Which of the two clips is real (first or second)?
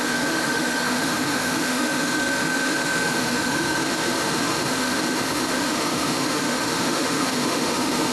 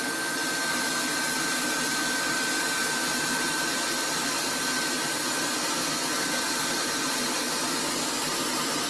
second